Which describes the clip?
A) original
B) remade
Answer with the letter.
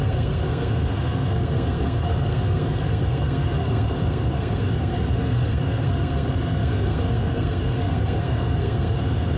B